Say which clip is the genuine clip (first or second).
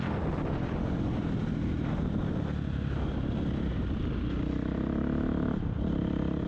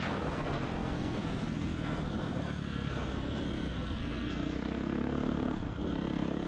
first